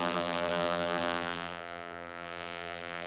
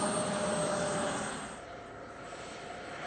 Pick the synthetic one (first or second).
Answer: first